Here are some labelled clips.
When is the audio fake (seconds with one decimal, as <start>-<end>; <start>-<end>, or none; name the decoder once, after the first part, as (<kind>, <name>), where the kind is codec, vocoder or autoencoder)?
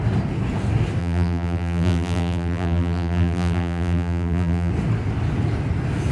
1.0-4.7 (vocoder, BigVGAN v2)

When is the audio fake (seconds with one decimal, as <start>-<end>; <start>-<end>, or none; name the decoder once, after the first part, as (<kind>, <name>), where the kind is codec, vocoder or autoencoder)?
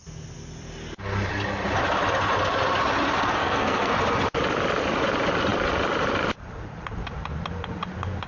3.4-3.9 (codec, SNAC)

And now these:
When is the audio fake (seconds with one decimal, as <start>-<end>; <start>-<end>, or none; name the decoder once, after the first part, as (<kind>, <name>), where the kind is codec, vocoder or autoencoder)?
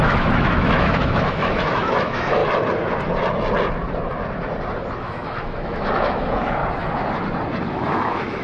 0.0-2.4 (autoencoder, DAC-VAE); 5.0-6.6; 7.7-8.4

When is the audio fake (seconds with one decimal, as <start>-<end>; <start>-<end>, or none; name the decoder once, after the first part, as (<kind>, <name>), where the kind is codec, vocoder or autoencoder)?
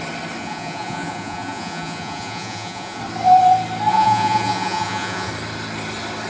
0.4-3.0 (vocoder, Vocos); 3.9-5.3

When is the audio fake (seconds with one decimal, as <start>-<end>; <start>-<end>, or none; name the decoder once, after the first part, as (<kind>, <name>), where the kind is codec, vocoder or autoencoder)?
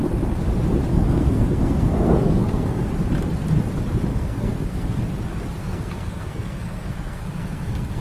0.9-2.9 (codec, SNAC); 4.1-5.0; 5.6-8.0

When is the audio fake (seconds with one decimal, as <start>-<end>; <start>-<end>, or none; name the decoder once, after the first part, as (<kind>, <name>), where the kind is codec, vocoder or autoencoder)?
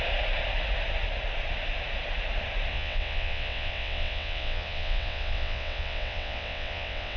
2.7-7.2 (vocoder, WaveNeXt)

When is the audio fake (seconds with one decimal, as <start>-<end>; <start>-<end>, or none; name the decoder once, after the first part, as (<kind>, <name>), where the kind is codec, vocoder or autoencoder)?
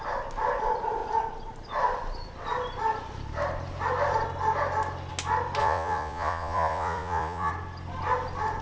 5.6-7.5 (vocoder, Vocos)